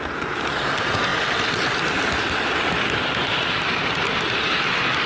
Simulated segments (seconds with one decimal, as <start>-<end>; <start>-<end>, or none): 1.1-4.2